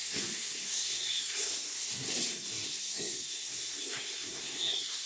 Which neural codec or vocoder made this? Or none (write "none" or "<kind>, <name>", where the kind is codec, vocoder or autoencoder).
codec, SNAC